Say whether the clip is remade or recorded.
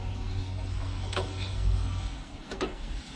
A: remade